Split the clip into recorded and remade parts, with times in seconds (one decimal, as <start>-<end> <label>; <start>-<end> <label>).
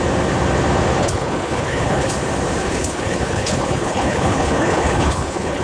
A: 0.0-1.0 recorded; 1.0-2.1 remade; 2.1-2.6 recorded; 2.6-5.6 remade